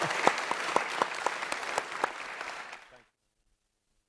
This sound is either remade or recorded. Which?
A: recorded